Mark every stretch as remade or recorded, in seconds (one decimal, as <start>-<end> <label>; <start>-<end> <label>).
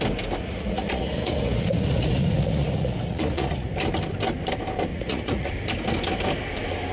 0.0-0.4 recorded; 0.4-3.7 remade; 3.7-4.9 recorded; 4.9-5.5 remade; 5.5-6.9 recorded